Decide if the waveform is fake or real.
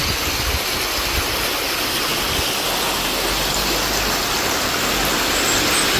real